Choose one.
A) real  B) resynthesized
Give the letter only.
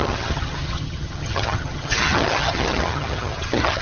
B